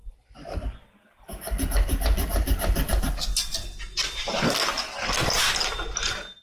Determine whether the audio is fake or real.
real